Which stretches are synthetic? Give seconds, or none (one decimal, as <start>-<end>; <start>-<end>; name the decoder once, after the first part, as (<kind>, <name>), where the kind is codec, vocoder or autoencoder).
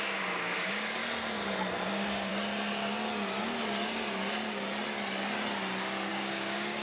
0.0-1.0 (codec, DAC); 1.9-2.3; 6.1-6.8